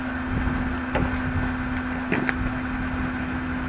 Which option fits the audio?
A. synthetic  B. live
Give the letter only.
B